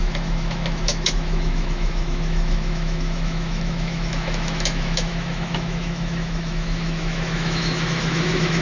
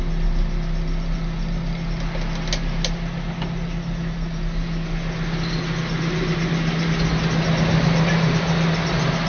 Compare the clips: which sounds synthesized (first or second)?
first